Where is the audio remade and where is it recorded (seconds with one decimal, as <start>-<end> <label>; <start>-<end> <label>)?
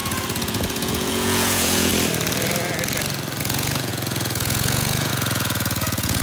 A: 0.0-1.9 remade; 1.9-3.4 recorded; 3.4-6.2 remade